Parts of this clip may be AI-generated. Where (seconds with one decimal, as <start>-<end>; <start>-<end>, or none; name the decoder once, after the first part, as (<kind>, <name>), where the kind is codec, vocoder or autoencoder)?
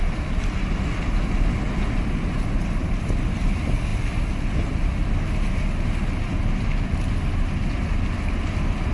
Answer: none